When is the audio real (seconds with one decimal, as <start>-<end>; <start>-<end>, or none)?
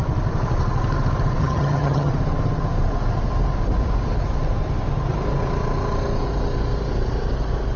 0.0-1.4; 2.1-7.8